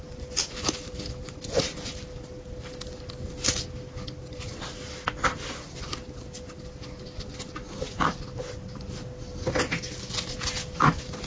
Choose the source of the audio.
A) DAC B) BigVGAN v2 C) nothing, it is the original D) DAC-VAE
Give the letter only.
C